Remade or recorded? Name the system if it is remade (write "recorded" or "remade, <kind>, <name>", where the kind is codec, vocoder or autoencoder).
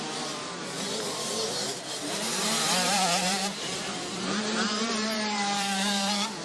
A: remade, vocoder, BigVGAN v2